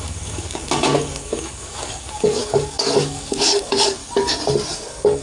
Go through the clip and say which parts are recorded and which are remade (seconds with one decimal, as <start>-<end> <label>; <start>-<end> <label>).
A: 0.0-4.0 remade; 4.0-4.7 recorded; 4.7-5.2 remade

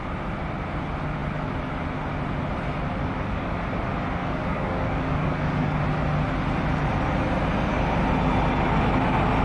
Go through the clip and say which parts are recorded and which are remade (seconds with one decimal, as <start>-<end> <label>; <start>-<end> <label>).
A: 0.0-3.0 recorded; 3.0-3.6 remade; 3.6-4.2 recorded; 4.2-5.8 remade; 5.8-9.4 recorded

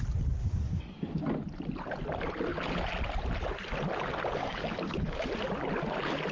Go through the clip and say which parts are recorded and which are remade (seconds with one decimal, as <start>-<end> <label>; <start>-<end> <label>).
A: 0.0-0.4 recorded; 0.4-1.2 remade; 1.2-4.4 recorded; 4.4-5.2 remade; 5.2-6.3 recorded